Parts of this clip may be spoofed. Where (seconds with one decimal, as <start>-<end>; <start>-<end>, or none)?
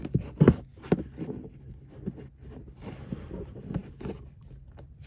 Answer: 0.0-0.7; 2.6-5.1